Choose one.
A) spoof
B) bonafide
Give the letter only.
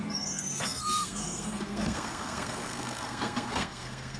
A